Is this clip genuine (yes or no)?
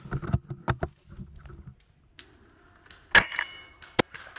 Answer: yes